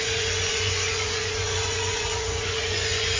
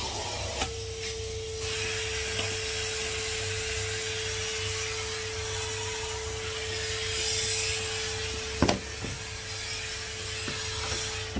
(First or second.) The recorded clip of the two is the second